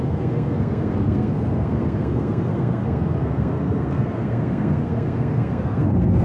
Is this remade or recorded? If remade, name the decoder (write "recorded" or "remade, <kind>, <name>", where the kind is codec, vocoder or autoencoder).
remade, codec, SNAC